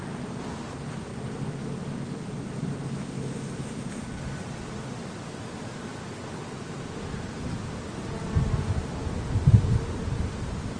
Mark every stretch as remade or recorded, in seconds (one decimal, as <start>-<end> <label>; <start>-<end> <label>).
0.0-10.8 recorded